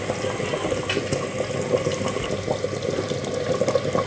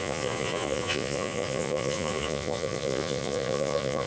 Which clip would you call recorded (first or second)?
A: first